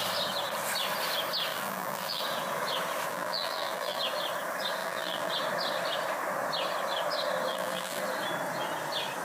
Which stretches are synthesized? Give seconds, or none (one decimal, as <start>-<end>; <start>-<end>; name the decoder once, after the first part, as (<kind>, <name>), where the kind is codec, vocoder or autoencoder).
1.5-2.2 (vocoder, BigVGAN v2); 3.1-4.0; 4.8-5.3; 7.5-8.0